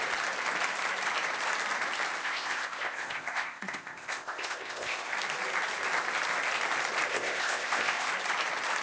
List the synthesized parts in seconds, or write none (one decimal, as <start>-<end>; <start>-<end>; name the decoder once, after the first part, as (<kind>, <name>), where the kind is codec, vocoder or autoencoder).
2.2-5.1 (codec, ZipCodec); 7.1-8.1